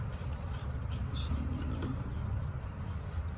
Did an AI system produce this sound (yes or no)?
yes